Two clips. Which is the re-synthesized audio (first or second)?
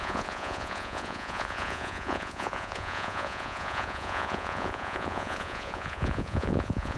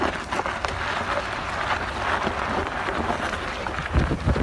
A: first